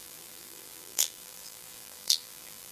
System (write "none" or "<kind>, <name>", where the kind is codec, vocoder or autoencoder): vocoder, BigVGAN v2